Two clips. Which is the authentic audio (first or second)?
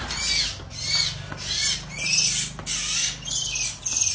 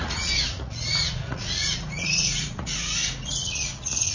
first